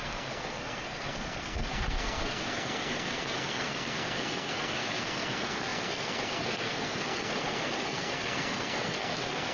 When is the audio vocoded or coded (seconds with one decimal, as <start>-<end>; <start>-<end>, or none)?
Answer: 0.0-9.5